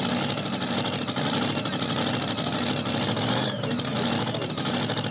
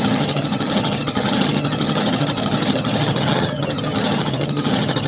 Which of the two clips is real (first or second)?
first